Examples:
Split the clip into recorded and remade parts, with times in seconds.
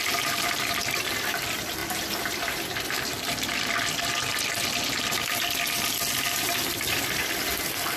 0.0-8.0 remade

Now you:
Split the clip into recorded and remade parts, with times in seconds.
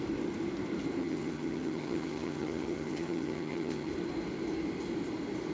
0.0-1.0 recorded; 1.0-3.9 remade; 3.9-5.5 recorded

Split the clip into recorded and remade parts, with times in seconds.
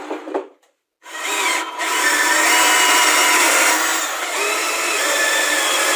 0.0-6.0 recorded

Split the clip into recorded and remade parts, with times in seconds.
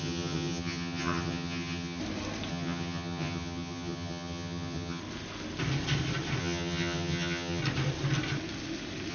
0.0-2.0 remade; 2.0-2.5 recorded; 2.5-5.0 remade; 5.0-6.4 recorded; 6.4-7.6 remade; 7.6-9.1 recorded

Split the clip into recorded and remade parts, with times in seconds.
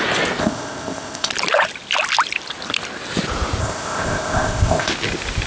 0.0-0.4 recorded; 0.4-1.3 remade; 1.3-3.6 recorded; 3.6-4.9 remade; 4.9-5.5 recorded